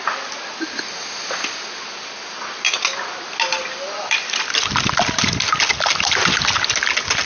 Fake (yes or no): no